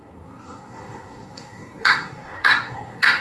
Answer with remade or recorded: remade